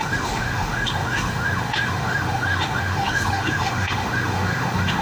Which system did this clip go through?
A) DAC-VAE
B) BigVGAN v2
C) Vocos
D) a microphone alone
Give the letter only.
A